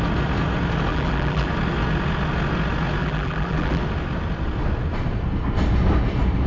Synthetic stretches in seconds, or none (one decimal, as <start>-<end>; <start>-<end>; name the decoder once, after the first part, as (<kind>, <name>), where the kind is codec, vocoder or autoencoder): 0.9-1.5 (vocoder, BigVGAN v2); 3.0-3.8